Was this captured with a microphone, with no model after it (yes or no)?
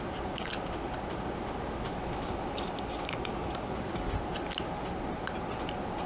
yes